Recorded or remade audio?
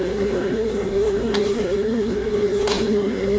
remade